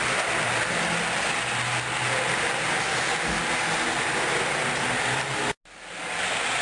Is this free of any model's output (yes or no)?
yes